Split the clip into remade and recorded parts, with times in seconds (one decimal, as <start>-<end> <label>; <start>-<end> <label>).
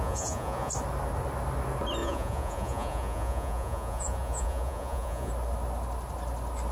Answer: 0.0-0.7 remade; 0.7-2.0 recorded; 2.0-5.3 remade; 5.3-6.7 recorded